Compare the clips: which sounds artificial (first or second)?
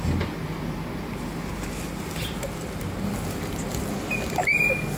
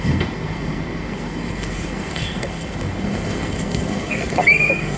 second